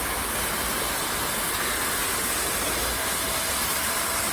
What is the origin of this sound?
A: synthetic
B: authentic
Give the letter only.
B